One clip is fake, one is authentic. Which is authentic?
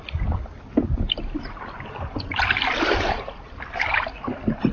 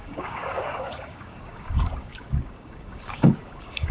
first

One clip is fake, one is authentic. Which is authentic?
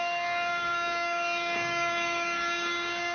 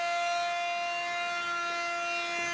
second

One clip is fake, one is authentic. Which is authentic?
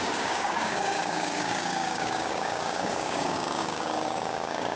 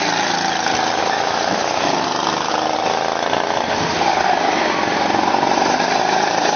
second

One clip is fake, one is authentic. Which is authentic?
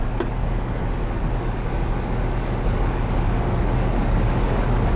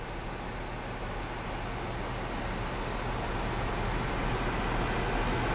second